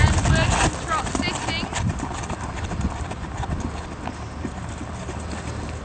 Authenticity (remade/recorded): recorded